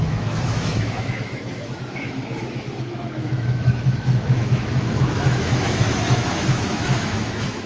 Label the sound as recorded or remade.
remade